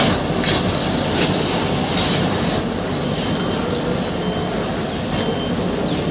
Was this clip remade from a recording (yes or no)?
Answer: no